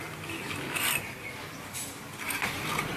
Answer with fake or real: real